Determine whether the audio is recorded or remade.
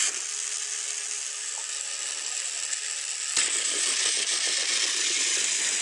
recorded